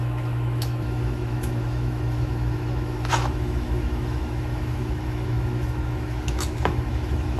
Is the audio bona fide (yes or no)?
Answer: no